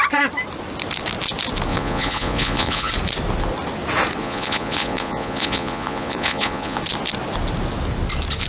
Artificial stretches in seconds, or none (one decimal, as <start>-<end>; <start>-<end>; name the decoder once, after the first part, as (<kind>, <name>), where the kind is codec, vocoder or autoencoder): 1.7-2.9 (vocoder, Vocos); 4.2-6.8